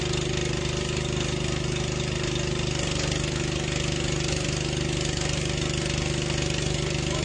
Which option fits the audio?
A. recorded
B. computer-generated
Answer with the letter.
A